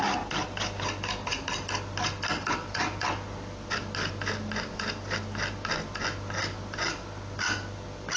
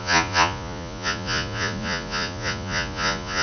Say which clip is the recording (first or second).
first